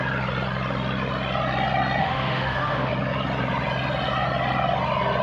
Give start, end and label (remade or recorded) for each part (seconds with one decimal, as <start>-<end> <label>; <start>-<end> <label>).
0.0-2.0 recorded; 2.0-2.9 remade; 2.9-5.2 recorded